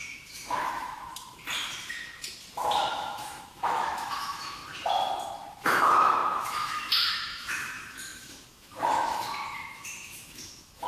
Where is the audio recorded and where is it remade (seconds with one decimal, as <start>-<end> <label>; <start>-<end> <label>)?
0.0-1.1 remade; 1.1-2.9 recorded; 2.9-4.6 remade; 4.6-5.5 recorded; 5.5-10.9 remade